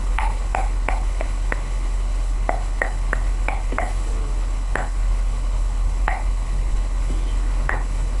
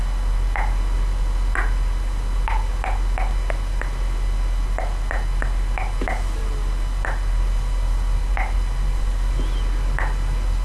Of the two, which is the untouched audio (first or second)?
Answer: second